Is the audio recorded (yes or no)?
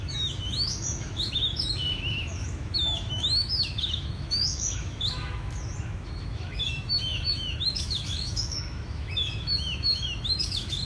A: no